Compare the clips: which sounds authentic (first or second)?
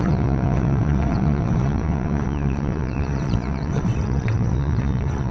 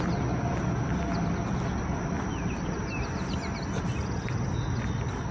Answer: second